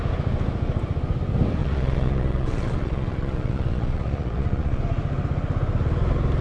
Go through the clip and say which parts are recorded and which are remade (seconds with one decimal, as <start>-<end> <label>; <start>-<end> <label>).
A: 0.0-1.6 recorded; 1.6-4.8 remade; 4.8-6.4 recorded